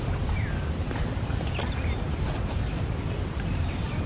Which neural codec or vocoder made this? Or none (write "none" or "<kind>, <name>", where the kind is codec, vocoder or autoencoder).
none